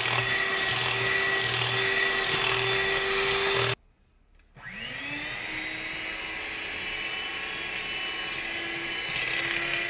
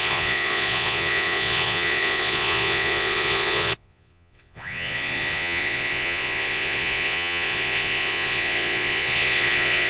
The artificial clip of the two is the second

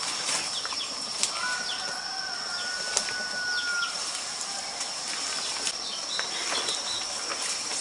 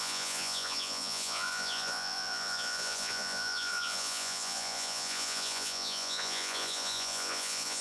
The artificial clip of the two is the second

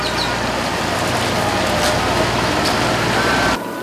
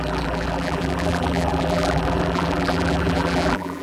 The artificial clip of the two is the second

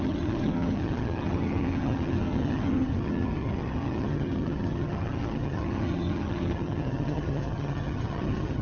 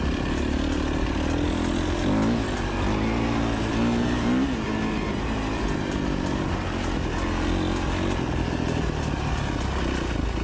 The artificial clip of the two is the first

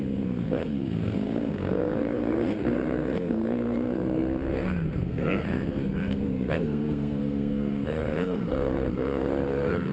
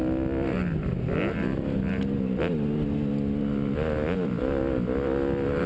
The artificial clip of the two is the first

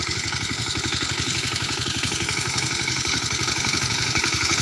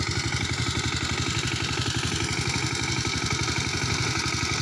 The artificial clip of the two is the first